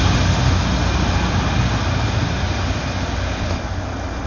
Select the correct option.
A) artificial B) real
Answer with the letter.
B